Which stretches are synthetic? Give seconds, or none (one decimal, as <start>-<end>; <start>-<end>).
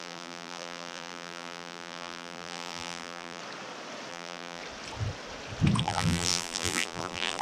0.0-3.4; 4.1-4.6; 5.8-7.4